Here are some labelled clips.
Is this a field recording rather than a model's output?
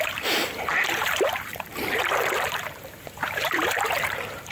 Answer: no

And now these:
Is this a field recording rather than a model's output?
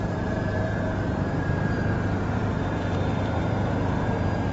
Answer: no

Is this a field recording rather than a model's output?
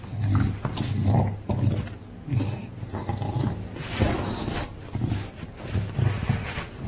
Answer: yes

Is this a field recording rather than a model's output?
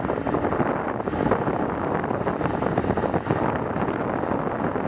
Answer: yes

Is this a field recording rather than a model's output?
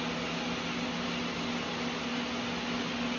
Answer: yes